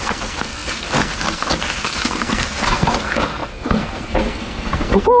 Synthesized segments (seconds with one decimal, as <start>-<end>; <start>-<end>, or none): 0.0-5.2